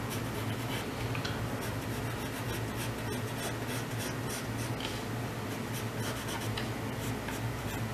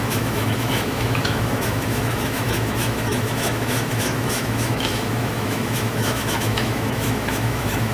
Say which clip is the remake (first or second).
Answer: second